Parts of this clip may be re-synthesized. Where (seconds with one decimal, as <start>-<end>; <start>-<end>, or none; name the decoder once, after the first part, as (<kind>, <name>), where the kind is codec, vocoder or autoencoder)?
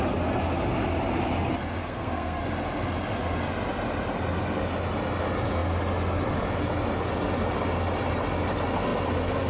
1.8-2.4 (codec, SNAC)